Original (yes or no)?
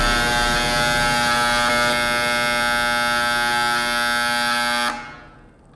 yes